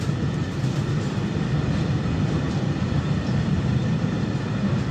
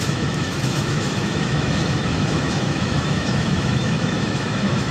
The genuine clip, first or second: first